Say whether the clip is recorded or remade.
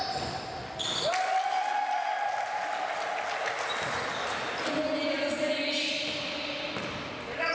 recorded